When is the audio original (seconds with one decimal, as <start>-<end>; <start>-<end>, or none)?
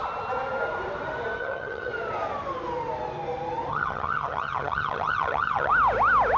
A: 0.0-1.4; 1.9-3.7; 5.7-6.4